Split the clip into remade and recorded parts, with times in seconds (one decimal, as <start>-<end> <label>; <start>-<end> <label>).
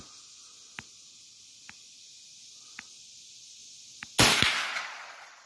0.0-4.7 recorded; 4.7-5.5 remade